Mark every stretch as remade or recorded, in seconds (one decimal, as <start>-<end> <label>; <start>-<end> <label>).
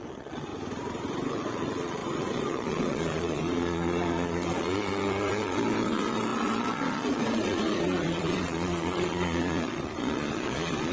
0.0-0.5 remade; 0.5-1.3 recorded; 1.3-10.9 remade